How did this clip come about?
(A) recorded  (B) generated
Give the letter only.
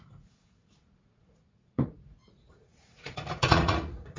B